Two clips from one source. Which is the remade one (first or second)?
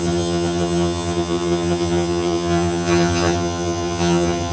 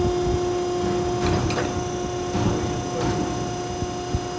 first